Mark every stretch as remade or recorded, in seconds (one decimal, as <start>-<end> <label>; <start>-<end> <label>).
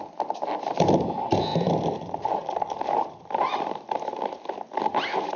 0.0-5.4 recorded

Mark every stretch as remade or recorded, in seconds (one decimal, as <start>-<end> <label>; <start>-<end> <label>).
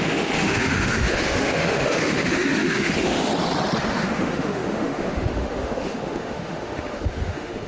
0.0-3.3 remade; 3.3-3.9 recorded; 3.9-7.7 remade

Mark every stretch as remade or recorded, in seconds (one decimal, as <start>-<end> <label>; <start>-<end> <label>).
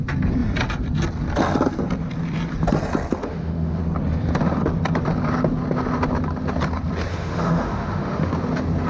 0.0-3.2 recorded; 3.2-3.8 remade; 3.8-7.1 recorded; 7.1-8.3 remade; 8.3-8.9 recorded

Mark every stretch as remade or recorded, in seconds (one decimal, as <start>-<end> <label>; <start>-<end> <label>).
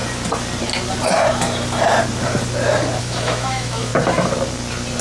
0.0-3.0 recorded; 3.0-3.9 remade; 3.9-5.0 recorded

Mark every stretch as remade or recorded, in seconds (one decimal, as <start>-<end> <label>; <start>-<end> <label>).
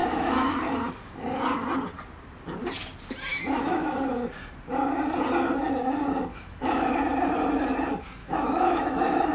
0.0-0.5 remade; 0.5-3.3 recorded; 3.3-4.1 remade; 4.1-6.3 recorded; 6.3-6.9 remade; 6.9-8.2 recorded; 8.2-9.3 remade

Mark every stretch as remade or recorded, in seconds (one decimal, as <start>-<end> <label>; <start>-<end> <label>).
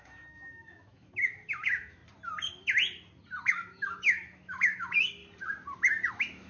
0.0-2.0 remade; 2.0-3.4 recorded; 3.4-5.2 remade; 5.2-6.1 recorded; 6.1-6.5 remade